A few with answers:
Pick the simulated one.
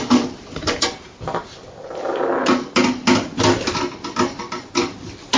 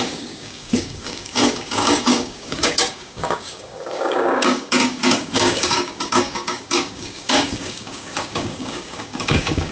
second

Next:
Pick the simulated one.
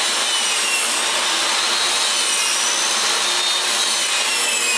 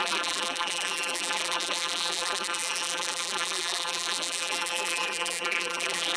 second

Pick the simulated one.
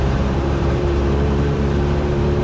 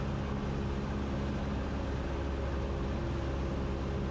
first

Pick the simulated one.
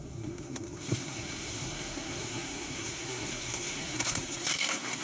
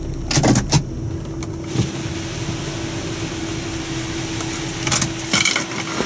first